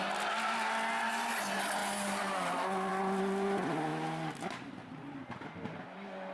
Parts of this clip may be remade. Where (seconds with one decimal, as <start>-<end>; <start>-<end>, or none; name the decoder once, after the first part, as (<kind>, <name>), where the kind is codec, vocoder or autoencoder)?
none